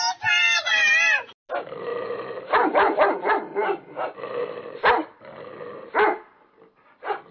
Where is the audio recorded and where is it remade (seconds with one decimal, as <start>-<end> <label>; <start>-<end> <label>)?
0.0-7.3 recorded